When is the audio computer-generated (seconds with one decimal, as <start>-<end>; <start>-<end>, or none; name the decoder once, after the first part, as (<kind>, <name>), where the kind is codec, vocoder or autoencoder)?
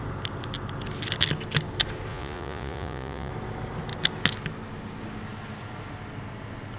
2.1-3.3 (vocoder, Vocos)